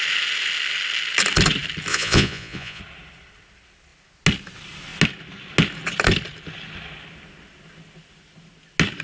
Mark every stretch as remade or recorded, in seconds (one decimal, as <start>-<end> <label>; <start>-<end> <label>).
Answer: 0.0-1.9 recorded; 1.9-2.8 remade; 2.8-9.0 recorded